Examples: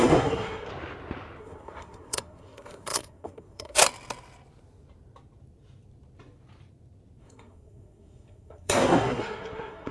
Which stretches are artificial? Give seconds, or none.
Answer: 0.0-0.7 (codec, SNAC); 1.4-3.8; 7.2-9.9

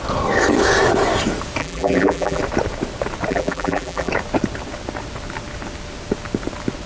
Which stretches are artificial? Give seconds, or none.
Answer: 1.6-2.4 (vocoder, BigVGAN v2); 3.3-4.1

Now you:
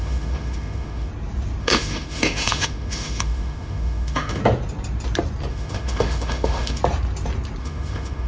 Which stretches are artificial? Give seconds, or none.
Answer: 0.0-1.1 (autoencoder, DAC-VAE); 1.6-4.4; 5.5-6.8; 7.6-8.3

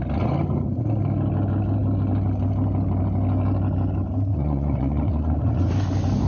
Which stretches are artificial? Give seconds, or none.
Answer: 4.3-5.7 (vocoder, Vocos)